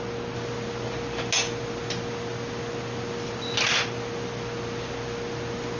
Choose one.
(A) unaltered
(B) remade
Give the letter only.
A